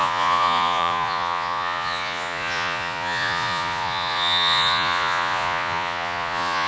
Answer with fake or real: fake